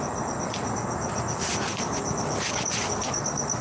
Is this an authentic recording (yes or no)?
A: yes